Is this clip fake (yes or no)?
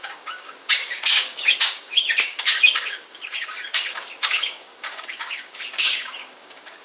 yes